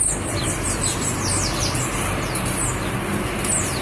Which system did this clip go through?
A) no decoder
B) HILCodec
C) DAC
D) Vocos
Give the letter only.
A